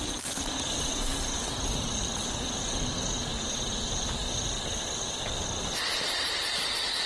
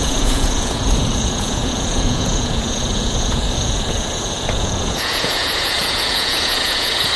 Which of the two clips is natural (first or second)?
first